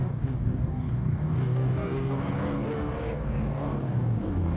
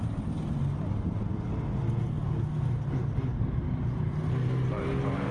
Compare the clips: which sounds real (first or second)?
second